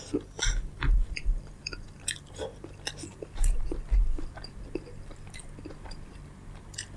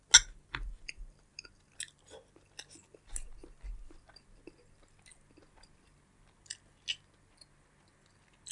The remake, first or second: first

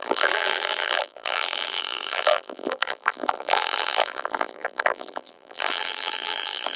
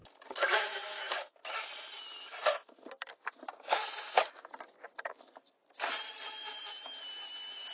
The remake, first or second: first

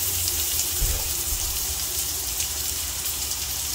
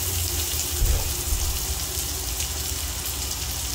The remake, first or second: first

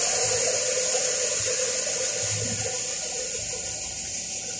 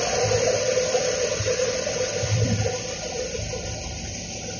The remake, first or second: second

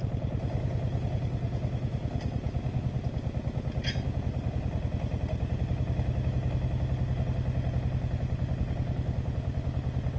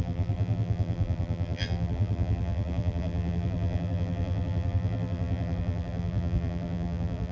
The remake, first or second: second